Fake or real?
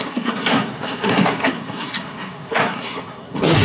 fake